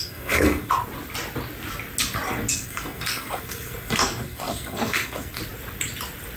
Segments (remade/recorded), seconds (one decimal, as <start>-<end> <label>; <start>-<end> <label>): 0.0-0.7 remade; 0.7-2.5 recorded; 2.5-5.4 remade; 5.4-6.4 recorded